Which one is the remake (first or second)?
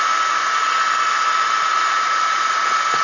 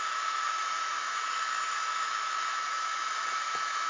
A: second